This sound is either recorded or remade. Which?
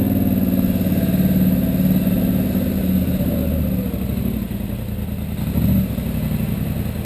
recorded